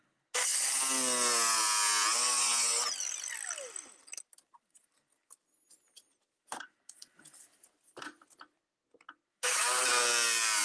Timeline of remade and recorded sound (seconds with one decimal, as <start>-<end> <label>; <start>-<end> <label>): 0.0-9.3 recorded; 9.3-9.8 remade; 9.8-10.6 recorded